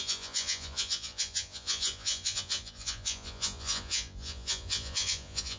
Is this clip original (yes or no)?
no